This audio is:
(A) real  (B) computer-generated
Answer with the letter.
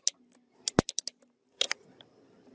A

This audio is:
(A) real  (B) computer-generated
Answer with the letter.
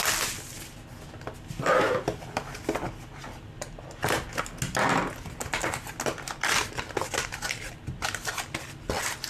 A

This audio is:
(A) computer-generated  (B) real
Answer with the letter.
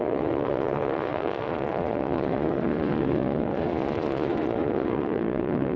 A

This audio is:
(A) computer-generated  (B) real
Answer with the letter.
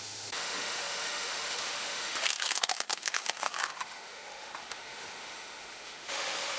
A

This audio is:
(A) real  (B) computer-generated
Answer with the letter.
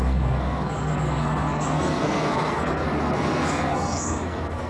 B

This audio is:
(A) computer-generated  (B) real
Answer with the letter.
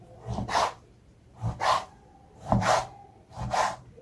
A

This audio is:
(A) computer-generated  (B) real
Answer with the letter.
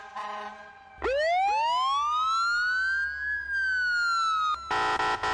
B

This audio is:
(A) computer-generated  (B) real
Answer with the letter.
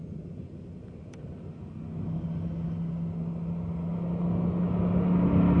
B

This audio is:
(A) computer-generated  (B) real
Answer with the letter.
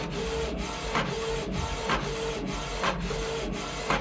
B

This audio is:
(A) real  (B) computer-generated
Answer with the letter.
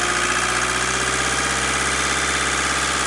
A